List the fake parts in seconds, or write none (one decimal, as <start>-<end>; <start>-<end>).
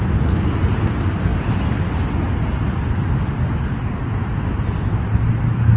none